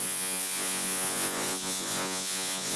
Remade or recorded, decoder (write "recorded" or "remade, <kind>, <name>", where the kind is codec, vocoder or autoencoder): remade, vocoder, Vocos